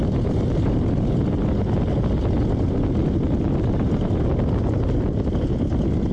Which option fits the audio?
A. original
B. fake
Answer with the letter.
A